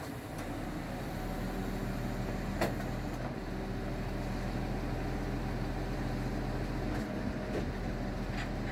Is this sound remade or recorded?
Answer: recorded